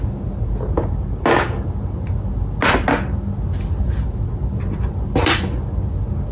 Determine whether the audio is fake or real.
real